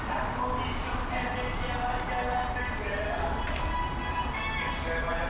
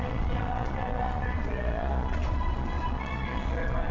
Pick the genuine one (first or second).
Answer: first